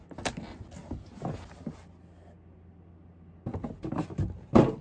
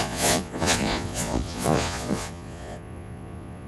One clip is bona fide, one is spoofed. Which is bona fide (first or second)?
first